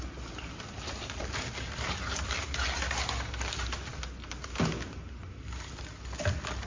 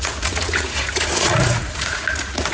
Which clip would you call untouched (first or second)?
first